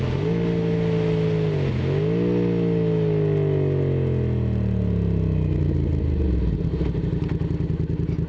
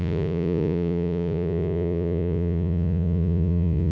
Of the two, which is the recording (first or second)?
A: first